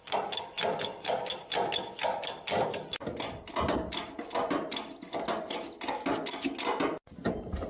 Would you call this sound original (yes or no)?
yes